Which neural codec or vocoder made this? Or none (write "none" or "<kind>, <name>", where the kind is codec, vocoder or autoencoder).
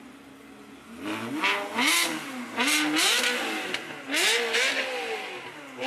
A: none